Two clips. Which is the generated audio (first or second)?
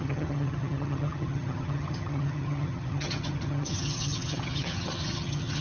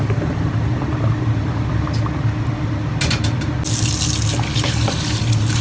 first